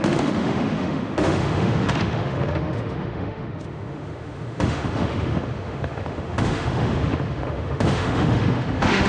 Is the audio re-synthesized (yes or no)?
yes